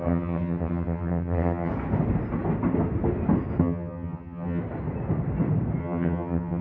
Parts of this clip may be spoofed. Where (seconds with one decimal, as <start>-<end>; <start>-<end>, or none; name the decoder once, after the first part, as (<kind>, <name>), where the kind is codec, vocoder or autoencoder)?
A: 0.0-1.7 (vocoder, HiFi-GAN); 3.6-4.6; 5.8-6.6